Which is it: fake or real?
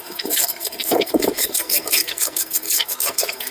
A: fake